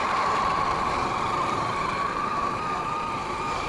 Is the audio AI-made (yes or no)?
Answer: yes